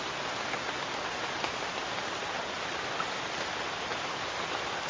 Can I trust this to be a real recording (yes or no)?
yes